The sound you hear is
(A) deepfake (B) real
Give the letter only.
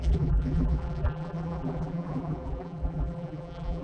A